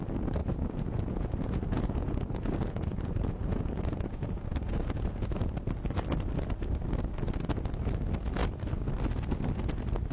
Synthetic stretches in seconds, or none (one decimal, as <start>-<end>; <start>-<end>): 0.4-5.4